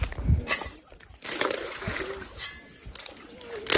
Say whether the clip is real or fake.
real